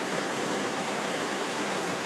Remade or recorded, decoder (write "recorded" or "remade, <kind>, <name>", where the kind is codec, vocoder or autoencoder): remade, codec, SNAC